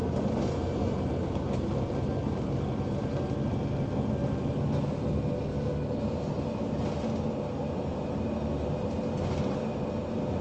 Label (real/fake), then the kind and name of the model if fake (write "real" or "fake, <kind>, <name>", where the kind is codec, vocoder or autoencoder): real